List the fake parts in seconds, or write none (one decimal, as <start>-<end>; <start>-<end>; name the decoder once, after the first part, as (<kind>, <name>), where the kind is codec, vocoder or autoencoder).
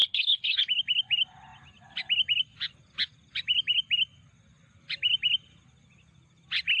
0.0-0.6 (codec, HILCodec)